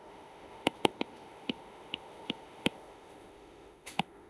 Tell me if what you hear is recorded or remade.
remade